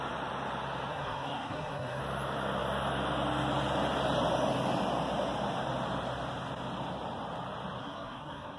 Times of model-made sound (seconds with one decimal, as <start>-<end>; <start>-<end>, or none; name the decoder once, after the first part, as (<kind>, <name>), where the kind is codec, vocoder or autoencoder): 0.9-2.0 (codec, SNAC); 7.8-8.6